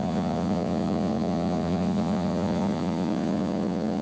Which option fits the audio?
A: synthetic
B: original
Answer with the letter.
A